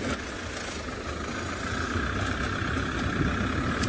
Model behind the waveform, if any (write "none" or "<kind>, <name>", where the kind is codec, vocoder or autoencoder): none